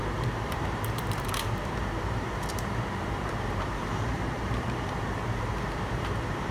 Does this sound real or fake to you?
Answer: fake